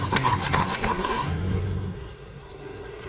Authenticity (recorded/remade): remade